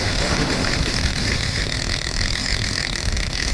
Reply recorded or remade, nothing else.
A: remade